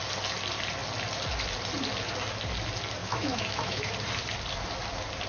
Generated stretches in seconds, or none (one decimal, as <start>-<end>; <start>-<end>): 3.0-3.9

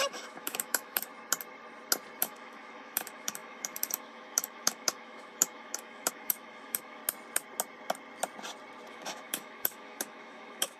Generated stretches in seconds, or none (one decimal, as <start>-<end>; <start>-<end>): 0.0-1.1; 2.2-7.0; 8.9-10.8

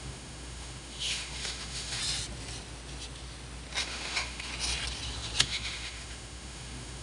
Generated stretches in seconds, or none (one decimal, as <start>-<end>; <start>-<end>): 0.0-2.0; 3.8-4.5; 5.4-7.0